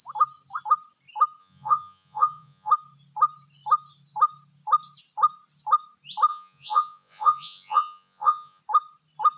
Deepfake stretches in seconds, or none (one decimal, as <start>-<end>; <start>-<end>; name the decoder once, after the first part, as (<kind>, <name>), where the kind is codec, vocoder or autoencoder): 1.4-2.7 (vocoder, Vocos); 6.3-8.6